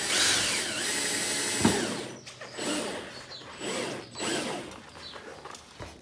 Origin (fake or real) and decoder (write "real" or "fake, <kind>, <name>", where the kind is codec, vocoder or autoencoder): real